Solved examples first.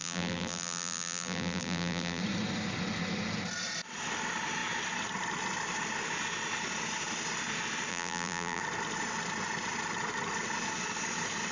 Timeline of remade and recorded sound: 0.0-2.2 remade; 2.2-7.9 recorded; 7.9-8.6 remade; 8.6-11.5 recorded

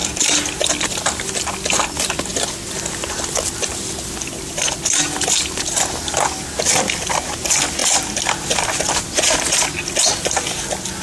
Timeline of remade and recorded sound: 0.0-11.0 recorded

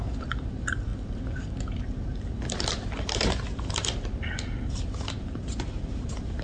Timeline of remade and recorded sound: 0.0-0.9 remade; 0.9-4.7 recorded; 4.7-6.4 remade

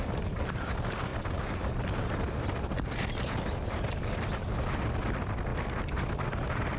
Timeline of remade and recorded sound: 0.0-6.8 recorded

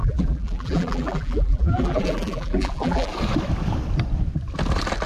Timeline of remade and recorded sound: 0.0-3.1 remade; 3.1-5.1 recorded

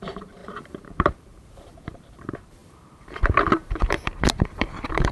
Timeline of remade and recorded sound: 0.0-5.1 remade